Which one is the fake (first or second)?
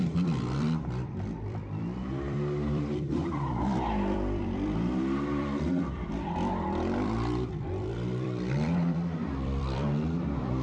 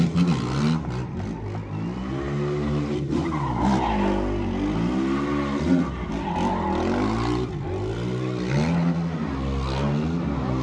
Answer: first